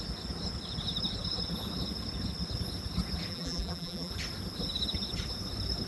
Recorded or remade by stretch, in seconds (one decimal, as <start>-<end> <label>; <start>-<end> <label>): 0.0-3.3 recorded; 3.3-4.1 remade; 4.1-5.9 recorded